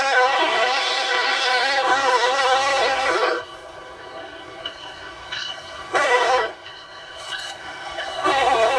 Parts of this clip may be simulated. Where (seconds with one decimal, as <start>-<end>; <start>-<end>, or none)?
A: 0.0-8.8